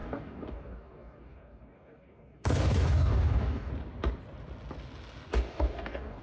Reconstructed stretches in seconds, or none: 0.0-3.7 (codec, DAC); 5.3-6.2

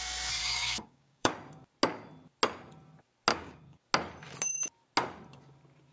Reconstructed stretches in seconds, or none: 0.4-1.3 (codec, DAC); 3.3-3.8

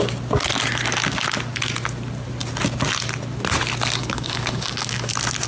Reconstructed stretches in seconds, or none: 4.0-5.1 (codec, DAC)